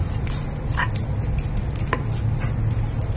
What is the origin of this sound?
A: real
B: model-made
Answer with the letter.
A